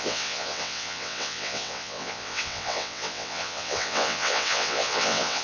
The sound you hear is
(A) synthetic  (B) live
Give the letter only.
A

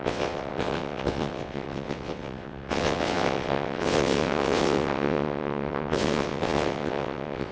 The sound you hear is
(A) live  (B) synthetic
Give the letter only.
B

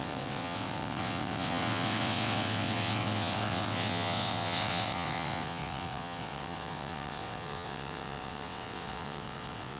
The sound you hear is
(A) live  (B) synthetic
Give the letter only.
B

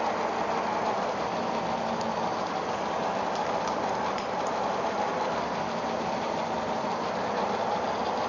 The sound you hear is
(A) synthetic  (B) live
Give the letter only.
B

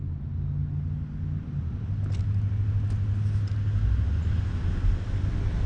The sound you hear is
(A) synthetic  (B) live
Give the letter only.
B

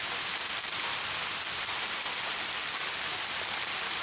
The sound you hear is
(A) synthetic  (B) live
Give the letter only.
B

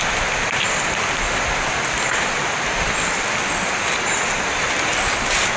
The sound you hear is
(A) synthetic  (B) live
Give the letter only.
B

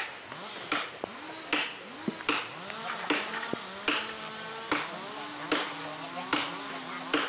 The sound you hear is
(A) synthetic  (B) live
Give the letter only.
B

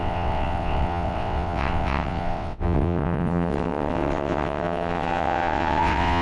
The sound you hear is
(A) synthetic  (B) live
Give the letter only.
A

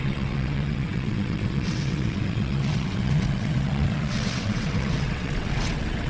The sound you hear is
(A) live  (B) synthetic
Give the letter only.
B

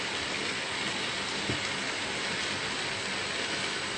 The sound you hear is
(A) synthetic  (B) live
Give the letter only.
B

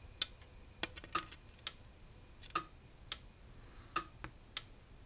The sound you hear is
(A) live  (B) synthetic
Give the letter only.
A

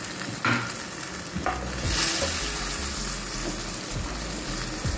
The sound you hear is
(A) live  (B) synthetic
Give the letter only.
A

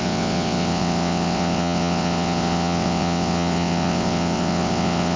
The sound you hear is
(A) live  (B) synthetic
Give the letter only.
B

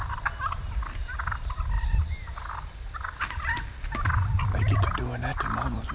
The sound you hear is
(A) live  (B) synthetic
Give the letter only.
A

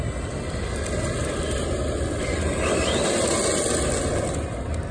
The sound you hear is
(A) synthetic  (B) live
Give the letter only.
B